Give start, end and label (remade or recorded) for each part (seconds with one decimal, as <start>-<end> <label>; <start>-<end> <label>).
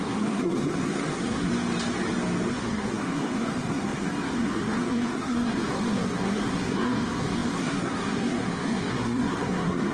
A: 0.0-1.5 remade; 1.5-2.5 recorded; 2.5-9.9 remade